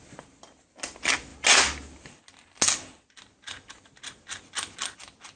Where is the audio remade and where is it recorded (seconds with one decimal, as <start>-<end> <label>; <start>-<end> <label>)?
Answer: 0.0-5.4 recorded